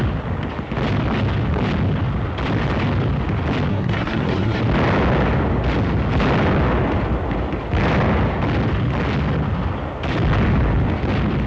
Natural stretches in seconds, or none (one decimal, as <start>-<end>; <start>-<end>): 0.0-3.7; 4.6-11.5